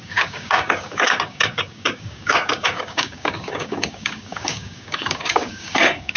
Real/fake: fake